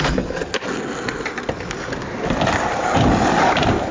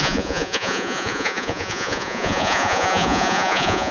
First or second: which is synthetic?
second